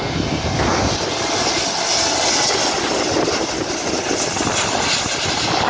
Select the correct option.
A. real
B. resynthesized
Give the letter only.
A